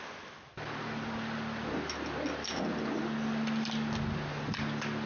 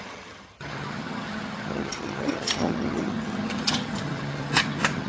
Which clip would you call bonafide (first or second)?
first